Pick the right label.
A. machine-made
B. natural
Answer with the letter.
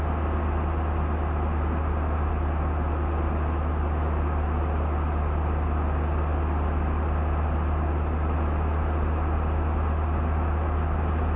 B